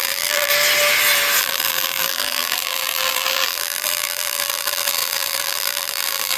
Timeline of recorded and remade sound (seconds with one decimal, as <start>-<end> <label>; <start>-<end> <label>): 0.0-0.5 remade; 0.5-1.4 recorded; 1.4-6.4 remade